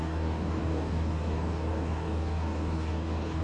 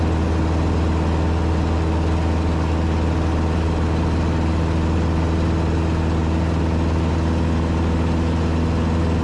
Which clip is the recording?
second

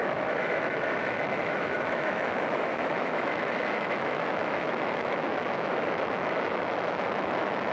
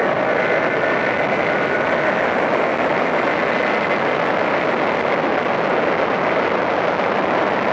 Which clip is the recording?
second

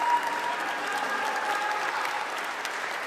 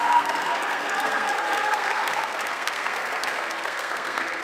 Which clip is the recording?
first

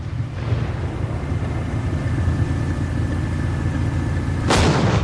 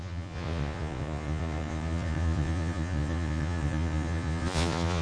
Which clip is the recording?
first